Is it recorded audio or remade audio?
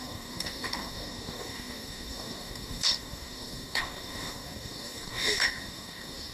remade